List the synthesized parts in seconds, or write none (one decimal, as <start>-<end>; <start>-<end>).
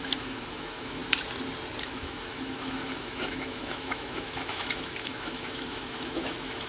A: 0.0-1.0; 1.8-6.7